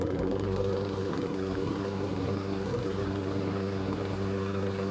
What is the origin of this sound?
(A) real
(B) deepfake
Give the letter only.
B